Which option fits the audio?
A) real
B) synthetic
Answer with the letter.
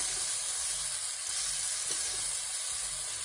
A